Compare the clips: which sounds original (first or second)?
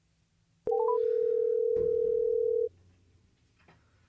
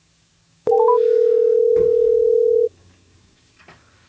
first